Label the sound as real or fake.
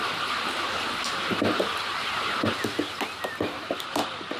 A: real